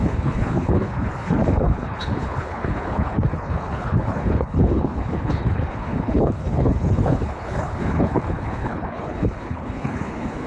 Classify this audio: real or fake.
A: fake